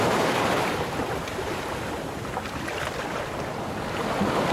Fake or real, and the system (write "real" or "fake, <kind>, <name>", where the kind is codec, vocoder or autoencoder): fake, vocoder, BigVGAN v2